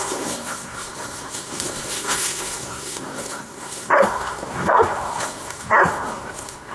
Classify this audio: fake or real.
fake